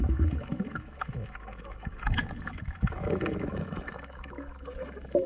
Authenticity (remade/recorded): remade